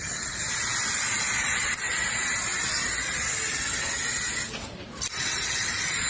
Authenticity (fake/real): real